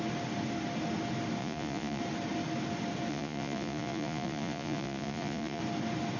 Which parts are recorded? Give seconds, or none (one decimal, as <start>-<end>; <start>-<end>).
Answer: 0.0-1.4; 2.0-3.1; 5.6-6.2